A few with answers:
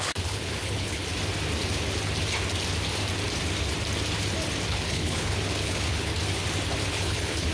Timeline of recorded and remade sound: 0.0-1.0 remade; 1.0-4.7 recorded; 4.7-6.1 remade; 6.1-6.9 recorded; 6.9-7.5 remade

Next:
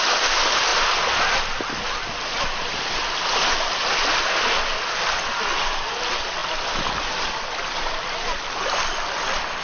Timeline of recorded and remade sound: 0.0-9.6 recorded

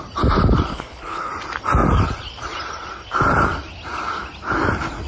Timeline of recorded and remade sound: 0.0-0.7 recorded; 0.7-1.3 remade; 1.3-5.1 recorded

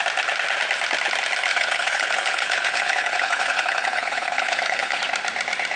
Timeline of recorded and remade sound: 0.0-1.5 recorded; 1.5-5.0 remade; 5.0-5.8 recorded

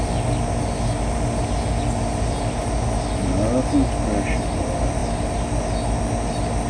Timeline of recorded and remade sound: 0.0-6.7 recorded

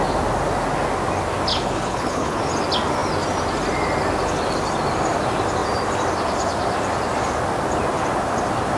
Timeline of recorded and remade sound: 0.0-1.5 recorded; 1.5-2.4 remade; 2.4-8.8 recorded